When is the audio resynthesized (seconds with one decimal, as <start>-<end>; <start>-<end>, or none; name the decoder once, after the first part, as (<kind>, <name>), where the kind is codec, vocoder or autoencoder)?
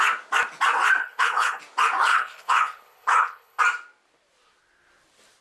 1.0-1.6 (codec, HILCodec); 2.1-3.6